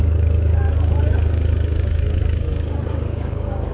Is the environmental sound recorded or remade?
remade